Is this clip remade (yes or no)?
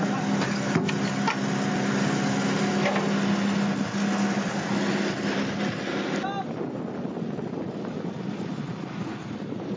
no